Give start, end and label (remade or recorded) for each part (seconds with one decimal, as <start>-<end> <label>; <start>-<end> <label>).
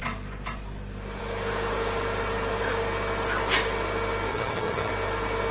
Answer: 0.0-4.3 recorded; 4.3-4.9 remade; 4.9-5.5 recorded